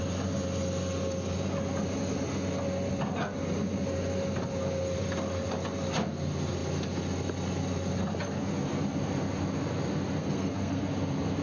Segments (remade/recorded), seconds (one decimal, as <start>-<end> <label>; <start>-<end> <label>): 0.0-10.2 recorded; 10.2-10.9 remade; 10.9-11.4 recorded